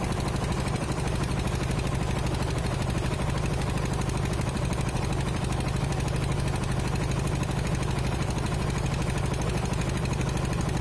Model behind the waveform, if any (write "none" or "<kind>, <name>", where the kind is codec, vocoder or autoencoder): vocoder, BigVGAN v2